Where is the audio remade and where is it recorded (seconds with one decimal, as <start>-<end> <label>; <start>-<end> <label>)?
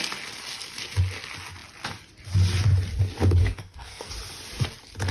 0.0-3.4 recorded; 3.4-4.1 remade; 4.1-5.1 recorded